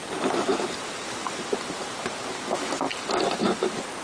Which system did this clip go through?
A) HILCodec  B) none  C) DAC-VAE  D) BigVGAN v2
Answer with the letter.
D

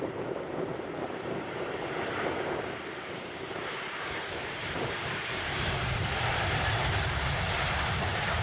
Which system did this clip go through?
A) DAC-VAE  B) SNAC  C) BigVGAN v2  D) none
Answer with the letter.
C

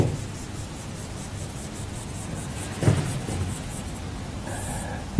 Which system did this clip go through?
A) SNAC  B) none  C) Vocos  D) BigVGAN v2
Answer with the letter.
B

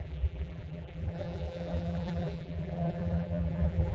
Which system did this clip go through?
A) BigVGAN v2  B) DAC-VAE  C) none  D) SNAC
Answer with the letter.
A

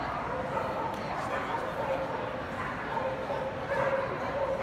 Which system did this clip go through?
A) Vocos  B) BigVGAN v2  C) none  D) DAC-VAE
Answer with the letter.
C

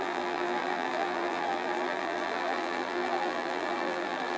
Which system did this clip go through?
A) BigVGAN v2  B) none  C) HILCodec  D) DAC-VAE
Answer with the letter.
A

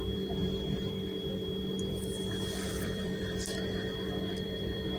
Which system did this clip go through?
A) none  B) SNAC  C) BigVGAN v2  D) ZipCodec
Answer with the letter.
C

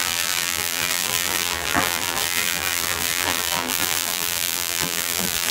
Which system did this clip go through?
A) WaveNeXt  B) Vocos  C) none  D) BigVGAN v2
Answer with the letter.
D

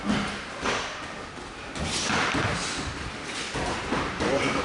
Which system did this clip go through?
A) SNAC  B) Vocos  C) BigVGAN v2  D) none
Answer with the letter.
D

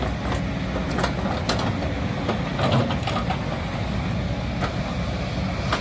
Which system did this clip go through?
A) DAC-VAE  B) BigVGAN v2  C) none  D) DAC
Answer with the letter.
C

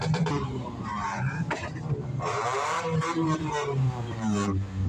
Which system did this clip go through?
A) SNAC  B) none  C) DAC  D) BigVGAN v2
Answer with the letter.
D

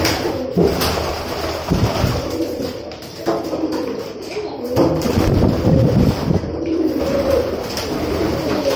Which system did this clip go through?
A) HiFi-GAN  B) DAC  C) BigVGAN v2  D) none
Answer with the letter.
C